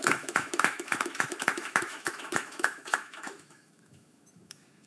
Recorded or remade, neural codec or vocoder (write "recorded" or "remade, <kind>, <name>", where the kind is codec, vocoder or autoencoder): remade, autoencoder, DAC-VAE